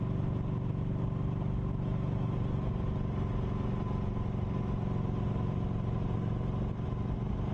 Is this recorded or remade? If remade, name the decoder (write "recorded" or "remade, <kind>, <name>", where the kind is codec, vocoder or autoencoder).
recorded